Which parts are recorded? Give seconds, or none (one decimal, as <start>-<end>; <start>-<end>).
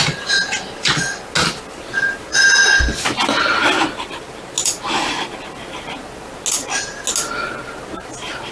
0.0-8.5